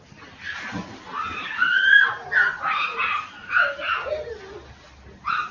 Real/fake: real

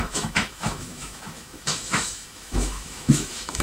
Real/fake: fake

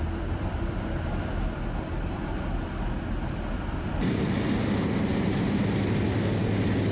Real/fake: real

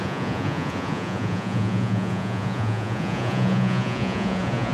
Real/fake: fake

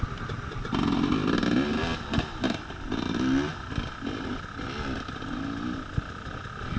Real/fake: real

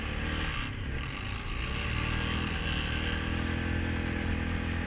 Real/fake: real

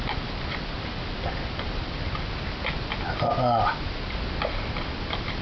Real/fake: real